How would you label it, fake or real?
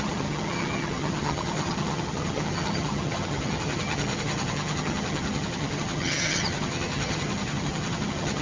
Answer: fake